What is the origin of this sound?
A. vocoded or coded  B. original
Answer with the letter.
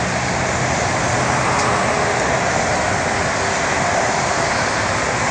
B